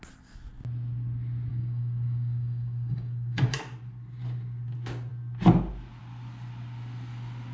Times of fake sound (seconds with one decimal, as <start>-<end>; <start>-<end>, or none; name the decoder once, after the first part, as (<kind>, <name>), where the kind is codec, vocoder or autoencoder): 1.5-3.4 (codec, DAC)